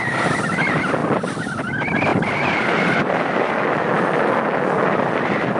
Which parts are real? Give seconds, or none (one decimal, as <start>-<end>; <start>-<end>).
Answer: 0.0-1.0; 1.7-5.6